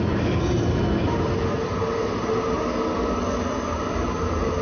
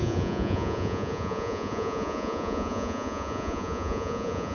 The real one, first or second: first